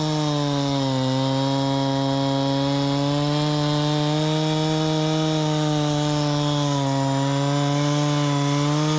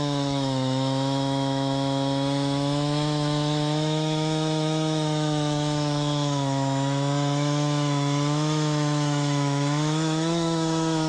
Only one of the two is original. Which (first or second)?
first